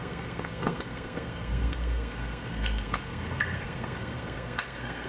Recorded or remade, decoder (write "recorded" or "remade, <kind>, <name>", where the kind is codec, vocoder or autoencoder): remade, codec, SNAC